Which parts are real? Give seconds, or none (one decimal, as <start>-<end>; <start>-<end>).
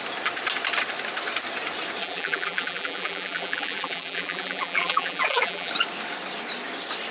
0.0-2.0; 5.7-7.1